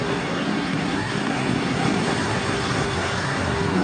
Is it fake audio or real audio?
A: fake